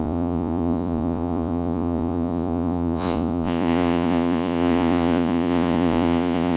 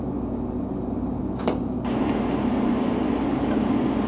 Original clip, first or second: second